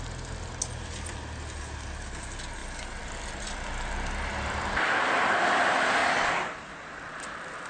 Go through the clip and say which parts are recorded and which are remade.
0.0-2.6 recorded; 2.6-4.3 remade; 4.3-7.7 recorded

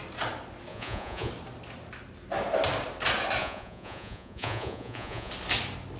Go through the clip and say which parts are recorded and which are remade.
0.0-0.7 recorded; 0.7-1.3 remade; 1.3-3.4 recorded; 3.4-5.3 remade; 5.3-6.0 recorded

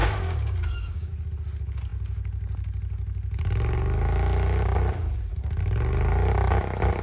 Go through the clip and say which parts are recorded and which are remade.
0.0-1.1 remade; 1.1-7.0 recorded

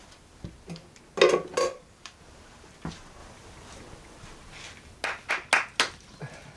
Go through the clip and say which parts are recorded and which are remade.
0.0-1.7 recorded; 1.7-2.2 remade; 2.2-6.6 recorded

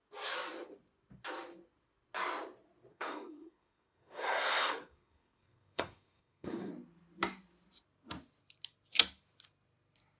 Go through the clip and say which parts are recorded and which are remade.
0.0-2.9 recorded; 2.9-6.7 remade; 6.7-10.2 recorded